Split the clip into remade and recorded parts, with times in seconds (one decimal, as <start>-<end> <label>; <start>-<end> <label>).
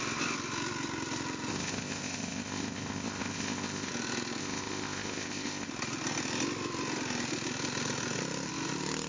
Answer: 0.0-1.5 recorded; 1.5-3.9 remade; 3.9-4.4 recorded; 4.4-5.7 remade; 5.7-9.1 recorded